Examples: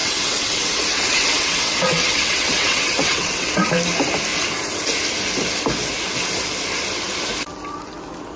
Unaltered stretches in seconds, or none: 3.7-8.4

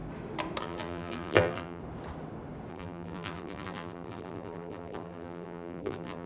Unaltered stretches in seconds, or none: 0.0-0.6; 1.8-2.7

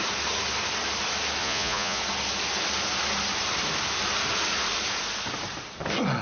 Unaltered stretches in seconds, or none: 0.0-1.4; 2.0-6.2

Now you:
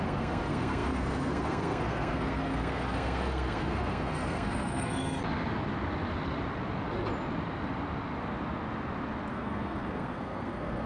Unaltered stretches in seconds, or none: 5.2-9.3